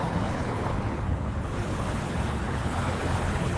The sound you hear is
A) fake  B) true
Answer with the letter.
A